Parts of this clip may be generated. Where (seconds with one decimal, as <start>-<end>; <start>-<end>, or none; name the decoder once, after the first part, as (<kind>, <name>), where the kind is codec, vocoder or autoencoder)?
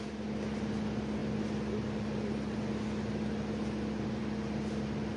none